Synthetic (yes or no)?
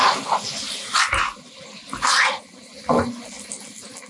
no